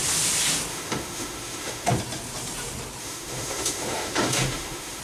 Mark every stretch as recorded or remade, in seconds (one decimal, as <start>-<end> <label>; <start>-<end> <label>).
0.0-0.7 recorded; 0.7-1.9 remade; 1.9-3.0 recorded; 3.0-5.0 remade